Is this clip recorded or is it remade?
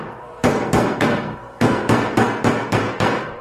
remade